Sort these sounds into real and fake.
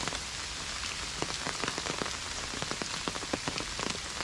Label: real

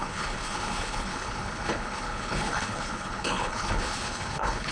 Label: fake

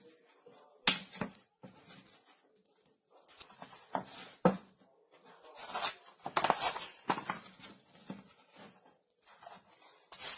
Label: real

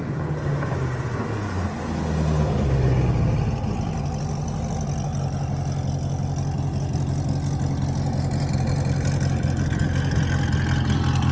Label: real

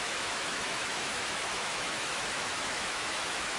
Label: fake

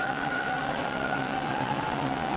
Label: fake